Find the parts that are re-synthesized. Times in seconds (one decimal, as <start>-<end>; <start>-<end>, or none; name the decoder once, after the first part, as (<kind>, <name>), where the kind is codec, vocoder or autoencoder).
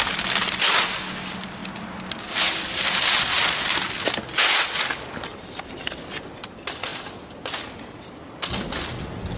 none